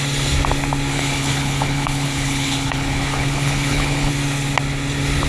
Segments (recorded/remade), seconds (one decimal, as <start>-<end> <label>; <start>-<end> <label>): 0.0-0.9 recorded; 0.9-4.1 remade; 4.1-5.3 recorded